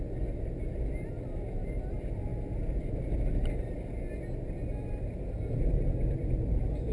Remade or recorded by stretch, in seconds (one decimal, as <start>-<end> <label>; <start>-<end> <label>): 0.0-6.9 recorded